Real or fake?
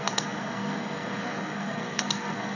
fake